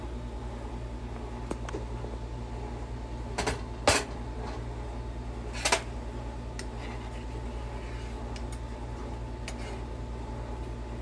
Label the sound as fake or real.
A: real